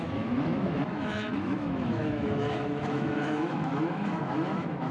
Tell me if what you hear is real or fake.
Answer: fake